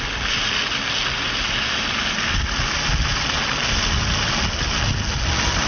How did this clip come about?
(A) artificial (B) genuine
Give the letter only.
B